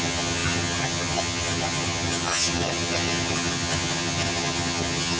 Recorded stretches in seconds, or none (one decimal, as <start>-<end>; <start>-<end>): none